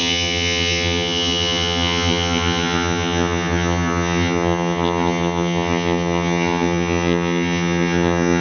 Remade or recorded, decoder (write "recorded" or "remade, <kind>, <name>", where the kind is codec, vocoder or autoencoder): remade, vocoder, HiFi-GAN